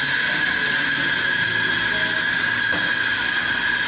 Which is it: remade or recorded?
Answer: recorded